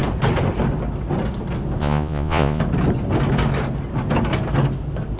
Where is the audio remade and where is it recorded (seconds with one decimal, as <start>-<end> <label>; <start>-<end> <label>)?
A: 0.0-1.8 recorded; 1.8-2.6 remade; 2.6-5.2 recorded